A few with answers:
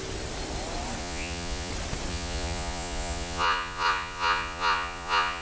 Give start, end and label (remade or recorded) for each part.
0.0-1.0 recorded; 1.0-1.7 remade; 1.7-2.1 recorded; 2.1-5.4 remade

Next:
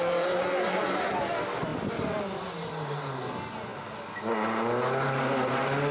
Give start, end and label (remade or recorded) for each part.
0.0-5.9 recorded

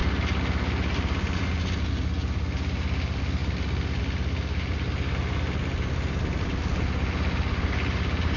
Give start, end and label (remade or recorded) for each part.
0.0-8.4 recorded

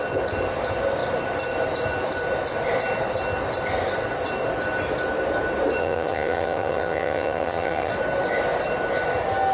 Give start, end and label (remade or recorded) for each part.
0.0-5.8 recorded; 5.8-7.9 remade; 7.9-9.5 recorded

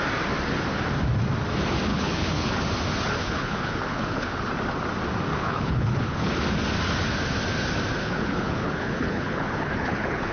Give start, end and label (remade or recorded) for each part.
0.0-1.9 recorded; 1.9-2.5 remade; 2.5-3.2 recorded; 3.2-4.5 remade; 4.5-5.3 recorded; 5.3-6.3 remade; 6.3-8.0 recorded; 8.0-10.3 remade

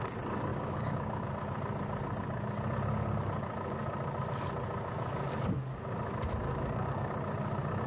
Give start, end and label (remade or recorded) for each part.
0.0-0.5 recorded; 0.5-1.3 remade; 1.3-6.4 recorded; 6.4-7.1 remade; 7.1-7.9 recorded

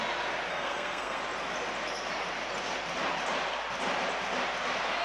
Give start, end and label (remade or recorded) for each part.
0.0-0.5 recorded; 0.5-1.2 remade; 1.2-5.0 recorded

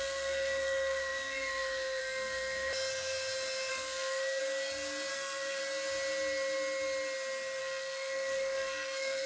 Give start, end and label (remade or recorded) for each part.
0.0-2.7 remade; 2.7-3.7 recorded; 3.7-4.4 remade; 4.4-5.1 recorded; 5.1-5.6 remade; 5.6-7.6 recorded; 7.6-9.3 remade